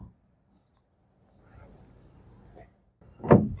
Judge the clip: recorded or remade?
recorded